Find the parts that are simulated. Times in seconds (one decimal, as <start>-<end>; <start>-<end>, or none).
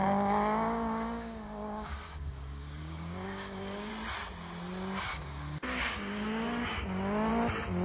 0.0-3.9; 5.1-7.3